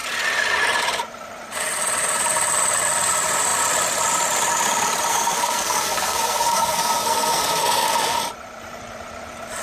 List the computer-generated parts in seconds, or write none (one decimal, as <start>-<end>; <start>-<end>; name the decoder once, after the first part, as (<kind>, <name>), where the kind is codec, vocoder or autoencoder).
5.1-8.2 (codec, SNAC)